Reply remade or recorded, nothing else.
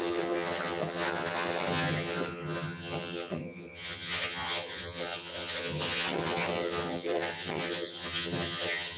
remade